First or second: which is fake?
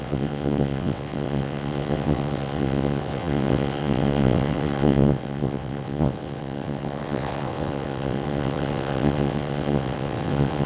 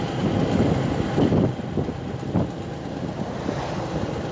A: first